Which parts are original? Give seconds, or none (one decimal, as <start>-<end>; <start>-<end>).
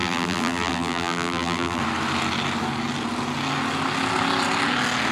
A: 1.8-5.1